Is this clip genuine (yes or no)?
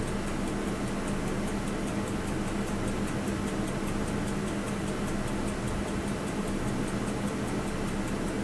yes